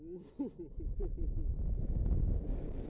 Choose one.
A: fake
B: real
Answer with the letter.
B